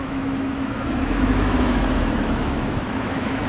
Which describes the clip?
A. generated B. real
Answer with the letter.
A